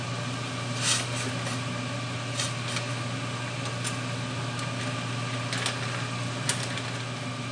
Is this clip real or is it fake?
real